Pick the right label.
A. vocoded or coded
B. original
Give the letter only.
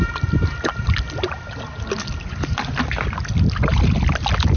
B